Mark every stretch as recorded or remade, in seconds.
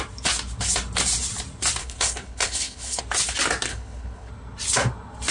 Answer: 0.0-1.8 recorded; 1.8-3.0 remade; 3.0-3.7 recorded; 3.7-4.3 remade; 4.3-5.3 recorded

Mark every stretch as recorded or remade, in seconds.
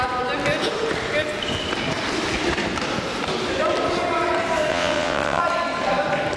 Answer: 0.0-4.7 recorded; 4.7-5.4 remade; 5.4-6.4 recorded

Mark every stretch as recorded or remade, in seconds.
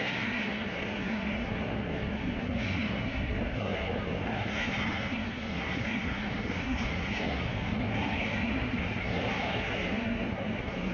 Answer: 0.0-10.9 remade